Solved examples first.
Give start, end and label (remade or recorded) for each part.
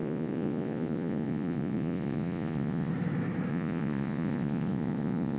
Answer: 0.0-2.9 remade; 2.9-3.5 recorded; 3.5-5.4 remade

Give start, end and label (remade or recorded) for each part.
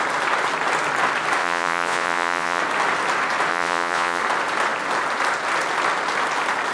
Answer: 0.0-1.4 recorded; 1.4-2.6 remade; 2.6-3.5 recorded; 3.5-4.2 remade; 4.2-6.7 recorded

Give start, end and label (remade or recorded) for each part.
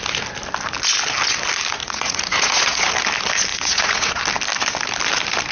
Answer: 0.0-1.8 recorded; 1.8-2.9 remade; 2.9-3.5 recorded; 3.5-4.2 remade; 4.2-5.5 recorded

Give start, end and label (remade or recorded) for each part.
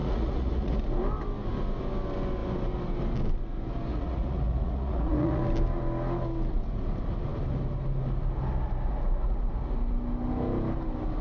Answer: 0.0-0.8 remade; 0.8-3.9 recorded; 3.9-5.4 remade; 5.4-11.2 recorded